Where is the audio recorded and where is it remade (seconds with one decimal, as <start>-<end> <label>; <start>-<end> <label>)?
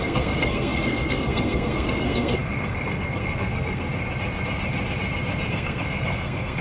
0.0-3.9 remade; 3.9-5.5 recorded; 5.5-6.6 remade